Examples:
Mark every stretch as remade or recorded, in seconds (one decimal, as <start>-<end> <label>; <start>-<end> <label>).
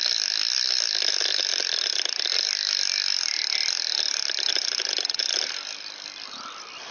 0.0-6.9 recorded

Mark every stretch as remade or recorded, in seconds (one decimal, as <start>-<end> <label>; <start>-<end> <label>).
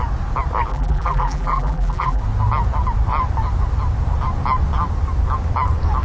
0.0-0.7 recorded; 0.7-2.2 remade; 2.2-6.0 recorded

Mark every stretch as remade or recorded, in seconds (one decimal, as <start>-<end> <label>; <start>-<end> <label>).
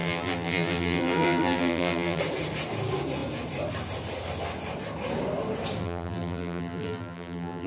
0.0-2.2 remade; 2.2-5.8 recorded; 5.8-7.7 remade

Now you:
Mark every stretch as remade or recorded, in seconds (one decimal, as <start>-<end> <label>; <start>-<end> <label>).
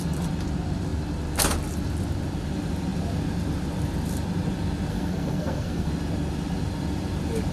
0.0-4.9 recorded; 4.9-5.9 remade; 5.9-7.5 recorded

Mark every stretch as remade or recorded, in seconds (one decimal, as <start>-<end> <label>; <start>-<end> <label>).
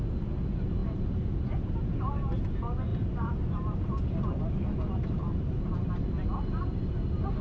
0.0-0.8 recorded; 0.8-1.7 remade; 1.7-2.9 recorded; 2.9-4.6 remade; 4.6-5.2 recorded; 5.2-6.6 remade; 6.6-7.4 recorded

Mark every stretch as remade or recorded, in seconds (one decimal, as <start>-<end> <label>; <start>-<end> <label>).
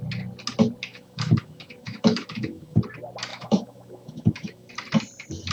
0.0-0.9 recorded; 0.9-2.8 remade; 2.8-3.3 recorded; 3.3-4.7 remade; 4.7-5.5 recorded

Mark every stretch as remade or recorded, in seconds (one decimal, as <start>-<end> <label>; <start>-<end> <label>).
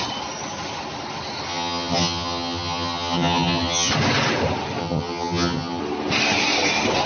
0.0-1.5 recorded; 1.5-3.9 remade; 3.9-4.8 recorded; 4.8-5.8 remade; 5.8-7.1 recorded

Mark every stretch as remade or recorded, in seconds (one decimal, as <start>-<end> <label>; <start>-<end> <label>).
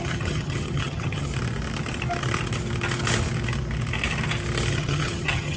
0.0-1.3 remade; 1.3-4.7 recorded; 4.7-5.6 remade